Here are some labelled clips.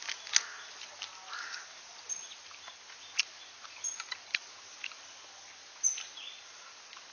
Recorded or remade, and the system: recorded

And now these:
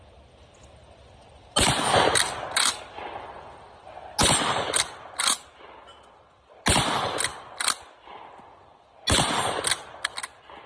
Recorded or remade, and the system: recorded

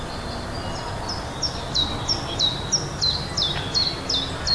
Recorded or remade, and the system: recorded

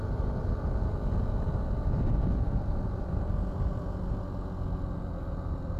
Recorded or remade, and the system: recorded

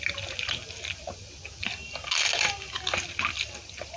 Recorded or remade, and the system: recorded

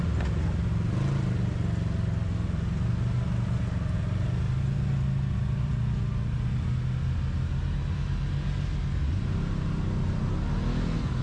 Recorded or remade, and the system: recorded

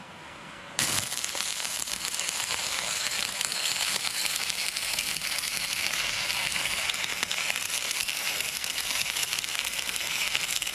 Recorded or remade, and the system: remade, codec, SNAC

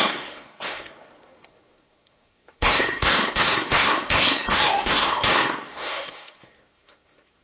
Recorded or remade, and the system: remade, codec, SNAC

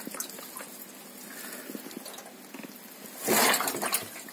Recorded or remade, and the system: recorded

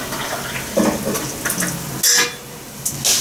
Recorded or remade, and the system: recorded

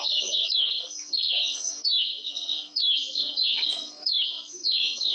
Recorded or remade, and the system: remade, codec, SNAC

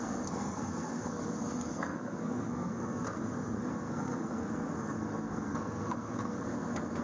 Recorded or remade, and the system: remade, codec, SNAC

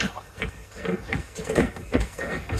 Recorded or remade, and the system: remade, codec, SNAC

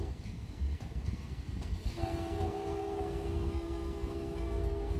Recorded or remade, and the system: remade, codec, SNAC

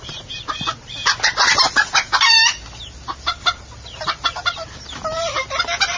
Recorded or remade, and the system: recorded